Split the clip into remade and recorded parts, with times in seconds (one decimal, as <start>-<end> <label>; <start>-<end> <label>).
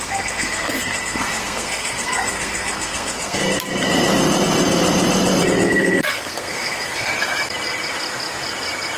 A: 0.0-3.4 remade; 3.4-5.7 recorded; 5.7-7.1 remade; 7.1-9.0 recorded